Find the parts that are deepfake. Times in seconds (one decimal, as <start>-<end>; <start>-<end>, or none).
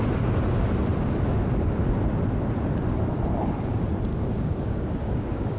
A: 4.1-5.6